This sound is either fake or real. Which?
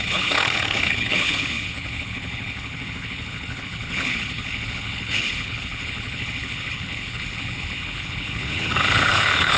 fake